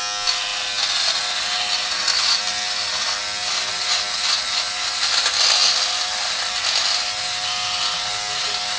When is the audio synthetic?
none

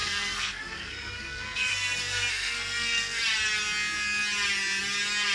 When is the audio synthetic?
0.0-3.2 (codec, SNAC)

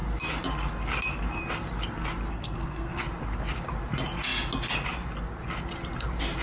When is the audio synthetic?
2.3-3.0 (codec, SNAC)

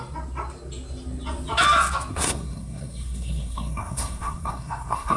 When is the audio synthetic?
2.1-5.2 (codec, SNAC)

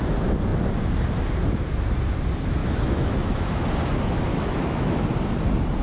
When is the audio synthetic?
2.6-3.6 (autoencoder, DAC-VAE); 4.3-5.0